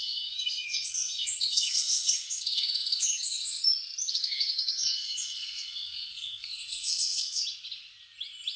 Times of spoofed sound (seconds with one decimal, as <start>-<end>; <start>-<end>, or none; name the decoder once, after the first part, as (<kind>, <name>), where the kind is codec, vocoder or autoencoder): 0.0-3.6 (codec, SNAC); 4.1-7.4